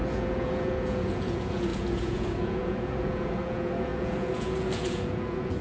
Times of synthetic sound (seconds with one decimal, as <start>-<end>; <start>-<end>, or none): 0.0-5.6